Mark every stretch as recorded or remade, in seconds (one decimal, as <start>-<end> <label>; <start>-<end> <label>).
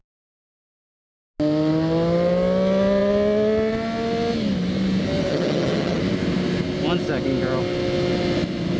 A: 0.0-5.3 recorded; 5.3-6.0 remade; 6.0-8.8 recorded